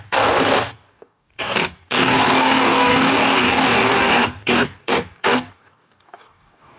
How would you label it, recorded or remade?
remade